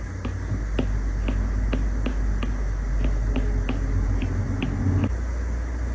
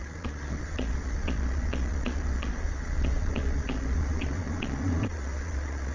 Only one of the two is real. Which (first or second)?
first